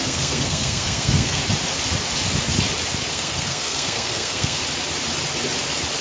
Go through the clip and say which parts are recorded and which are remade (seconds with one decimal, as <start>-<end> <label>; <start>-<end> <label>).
0.0-1.4 remade; 1.4-3.1 recorded; 3.1-4.6 remade; 4.6-6.0 recorded